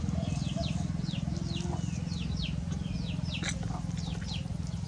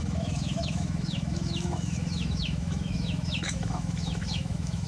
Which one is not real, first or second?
second